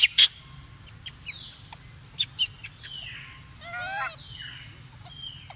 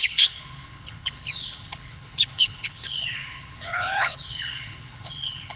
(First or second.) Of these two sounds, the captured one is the first